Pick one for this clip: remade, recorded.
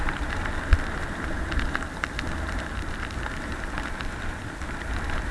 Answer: recorded